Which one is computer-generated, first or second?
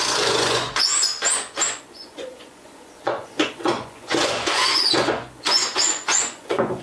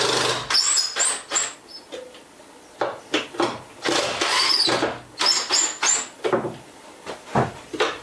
first